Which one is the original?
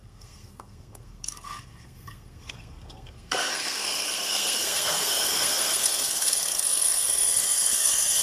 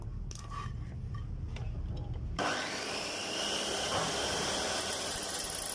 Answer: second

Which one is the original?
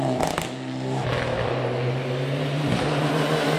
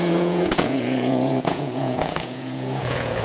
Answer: first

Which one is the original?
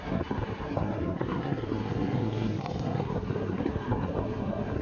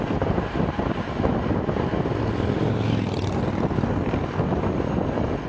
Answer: second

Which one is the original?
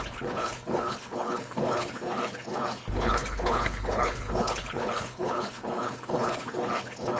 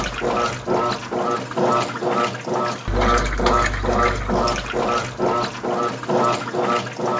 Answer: second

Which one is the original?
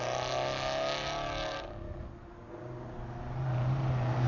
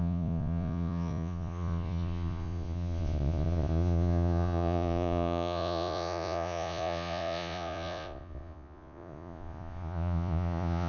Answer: first